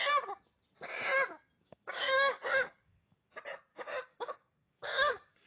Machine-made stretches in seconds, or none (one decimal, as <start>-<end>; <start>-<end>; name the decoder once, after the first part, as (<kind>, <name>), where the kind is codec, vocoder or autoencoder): 1.6-3.3 (codec, DAC); 3.7-5.5